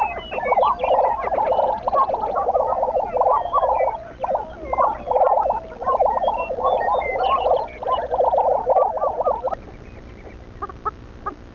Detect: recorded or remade recorded